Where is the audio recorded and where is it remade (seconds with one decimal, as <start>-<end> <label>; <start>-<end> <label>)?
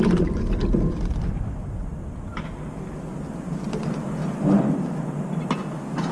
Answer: 0.0-6.1 recorded